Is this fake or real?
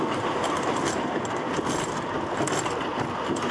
real